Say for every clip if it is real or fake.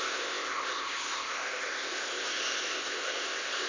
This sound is fake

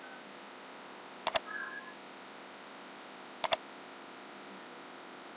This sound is real